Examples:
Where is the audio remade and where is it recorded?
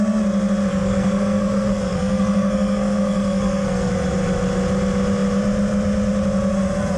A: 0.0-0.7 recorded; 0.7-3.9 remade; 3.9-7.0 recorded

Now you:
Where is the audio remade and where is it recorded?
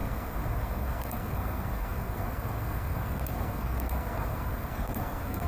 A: 0.0-5.5 remade